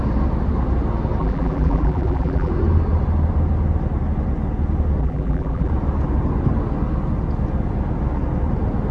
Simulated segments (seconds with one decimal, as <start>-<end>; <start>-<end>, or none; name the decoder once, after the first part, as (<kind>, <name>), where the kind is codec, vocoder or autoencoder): 1.2-2.5 (vocoder, BigVGAN v2); 5.0-5.7